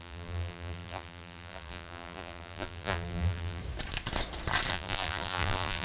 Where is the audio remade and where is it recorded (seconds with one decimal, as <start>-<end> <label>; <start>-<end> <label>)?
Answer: 0.0-3.6 remade; 3.6-4.7 recorded; 4.7-5.8 remade